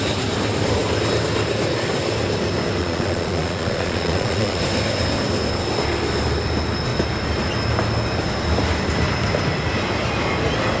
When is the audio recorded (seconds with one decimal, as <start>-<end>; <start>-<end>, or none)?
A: 0.0-2.8; 4.6-10.8